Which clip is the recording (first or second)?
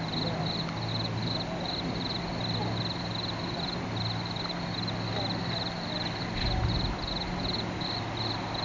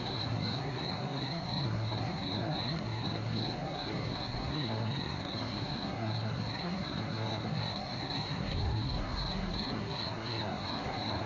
first